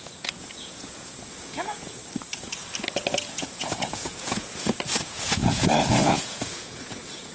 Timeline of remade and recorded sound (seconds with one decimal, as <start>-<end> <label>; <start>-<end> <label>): 0.0-2.0 remade; 2.0-3.3 recorded; 3.3-7.3 remade